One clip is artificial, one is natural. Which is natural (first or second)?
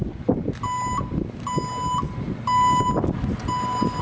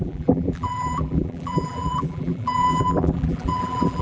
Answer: first